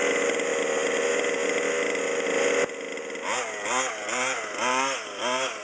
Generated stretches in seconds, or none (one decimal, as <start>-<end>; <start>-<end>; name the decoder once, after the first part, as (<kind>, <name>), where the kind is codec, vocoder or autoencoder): none